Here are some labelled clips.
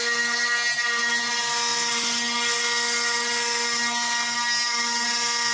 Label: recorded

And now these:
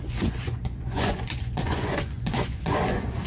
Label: remade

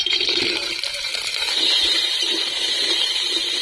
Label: remade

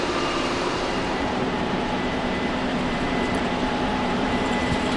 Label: remade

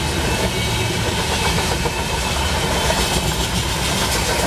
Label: recorded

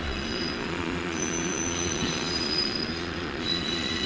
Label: remade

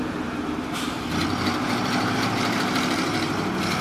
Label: remade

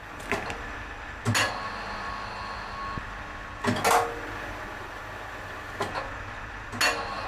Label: recorded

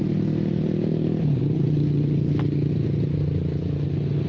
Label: recorded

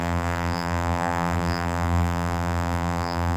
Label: remade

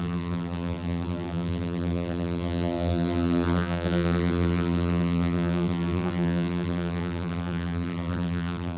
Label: remade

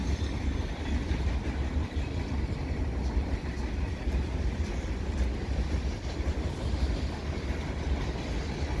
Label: recorded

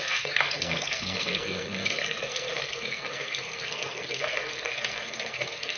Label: remade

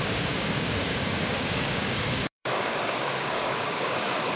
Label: remade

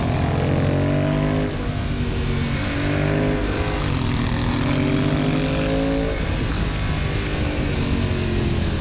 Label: recorded